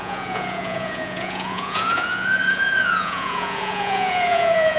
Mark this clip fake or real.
fake